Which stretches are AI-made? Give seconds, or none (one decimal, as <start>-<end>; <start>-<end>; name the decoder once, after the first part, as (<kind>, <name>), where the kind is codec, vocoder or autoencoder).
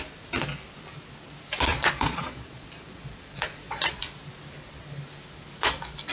1.7-4.0 (vocoder, Vocos)